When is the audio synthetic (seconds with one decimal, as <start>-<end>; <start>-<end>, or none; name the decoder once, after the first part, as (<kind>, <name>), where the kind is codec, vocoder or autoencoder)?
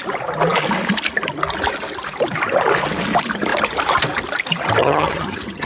4.8-5.7 (vocoder, HiFi-GAN)